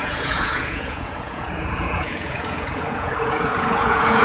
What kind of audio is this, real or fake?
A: fake